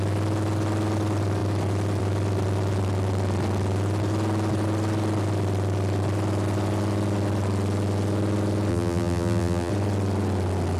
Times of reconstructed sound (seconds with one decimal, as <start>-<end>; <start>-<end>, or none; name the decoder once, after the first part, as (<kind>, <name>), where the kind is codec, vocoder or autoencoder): 8.7-9.7 (vocoder, BigVGAN v2)

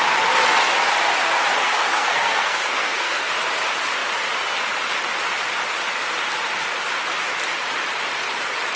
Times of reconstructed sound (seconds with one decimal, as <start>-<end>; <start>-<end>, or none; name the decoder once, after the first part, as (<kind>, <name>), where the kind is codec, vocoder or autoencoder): 1.6-3.3 (codec, SNAC)